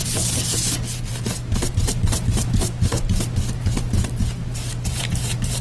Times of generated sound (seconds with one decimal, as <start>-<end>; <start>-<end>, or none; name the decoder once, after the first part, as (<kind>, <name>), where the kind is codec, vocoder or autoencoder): 1.7-2.9 (vocoder, BigVGAN v2); 4.9-5.6